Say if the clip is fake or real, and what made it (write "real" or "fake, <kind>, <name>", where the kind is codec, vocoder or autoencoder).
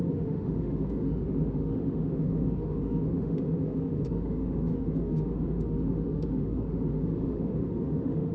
fake, autoencoder, DAC-VAE